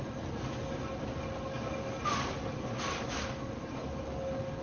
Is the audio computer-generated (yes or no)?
no